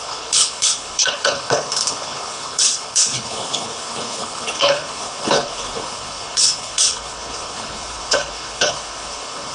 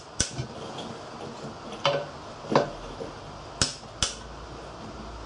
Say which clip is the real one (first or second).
second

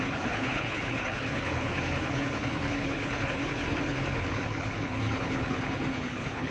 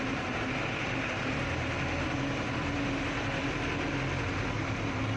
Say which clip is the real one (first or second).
second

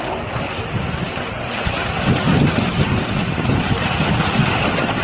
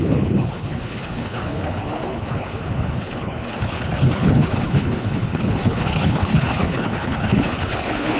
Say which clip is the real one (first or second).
first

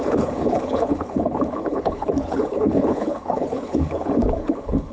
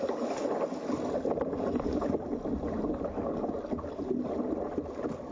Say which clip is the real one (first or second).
second